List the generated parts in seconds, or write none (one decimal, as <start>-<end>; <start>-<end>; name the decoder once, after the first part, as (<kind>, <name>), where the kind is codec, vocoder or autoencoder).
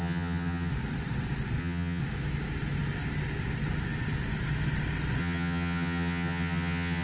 0.0-0.7 (vocoder, HiFi-GAN); 1.6-2.0; 5.2-7.0